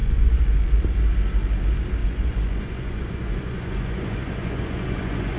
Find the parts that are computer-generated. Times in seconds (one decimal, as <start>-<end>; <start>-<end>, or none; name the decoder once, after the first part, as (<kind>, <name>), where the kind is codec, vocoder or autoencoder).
0.0-0.8 (vocoder, Vocos); 2.0-5.4